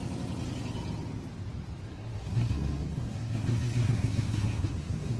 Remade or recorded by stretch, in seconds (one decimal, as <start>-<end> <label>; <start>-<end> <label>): 0.0-1.9 recorded; 1.9-5.2 remade

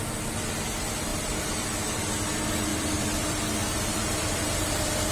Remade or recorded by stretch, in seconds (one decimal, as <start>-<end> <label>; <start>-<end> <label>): 0.0-1.1 recorded; 1.1-1.8 remade; 1.8-2.7 recorded; 2.7-4.4 remade; 4.4-5.1 recorded

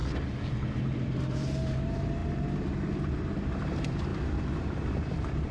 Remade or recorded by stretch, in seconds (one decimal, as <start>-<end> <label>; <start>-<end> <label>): 0.0-0.8 recorded; 0.8-2.2 remade; 2.2-3.6 recorded; 3.6-4.1 remade; 4.1-4.6 recorded; 4.6-5.5 remade

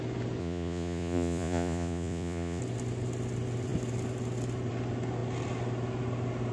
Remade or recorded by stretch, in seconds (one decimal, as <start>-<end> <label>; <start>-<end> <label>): 0.0-0.4 recorded; 0.4-2.6 remade; 2.6-6.5 recorded

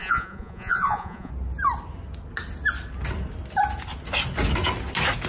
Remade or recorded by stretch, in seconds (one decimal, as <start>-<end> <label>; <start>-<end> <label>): 0.0-1.3 remade; 1.3-5.3 recorded

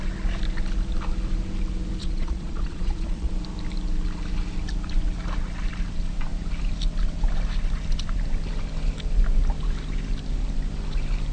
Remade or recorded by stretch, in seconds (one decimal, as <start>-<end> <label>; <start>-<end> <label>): 0.0-2.0 recorded; 2.0-3.3 remade; 3.3-11.3 recorded

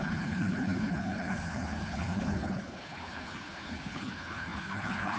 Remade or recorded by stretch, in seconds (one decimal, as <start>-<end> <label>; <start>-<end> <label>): 0.0-5.2 remade

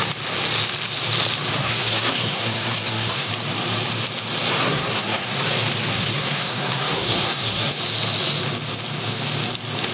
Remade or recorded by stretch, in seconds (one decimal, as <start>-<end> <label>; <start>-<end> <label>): 0.0-1.6 recorded; 1.6-3.3 remade; 3.3-4.6 recorded; 4.6-5.4 remade; 5.4-5.9 recorded; 5.9-7.8 remade; 7.8-9.9 recorded